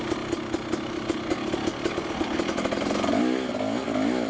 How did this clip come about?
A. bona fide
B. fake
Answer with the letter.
A